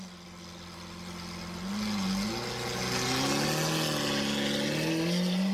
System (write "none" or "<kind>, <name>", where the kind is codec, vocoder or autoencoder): none